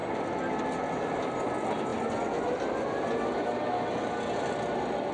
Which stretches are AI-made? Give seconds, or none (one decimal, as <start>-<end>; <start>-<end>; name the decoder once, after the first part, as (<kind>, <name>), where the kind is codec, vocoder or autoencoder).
none